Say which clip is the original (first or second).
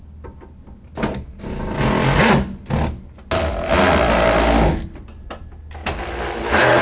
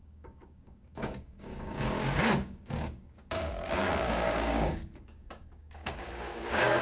first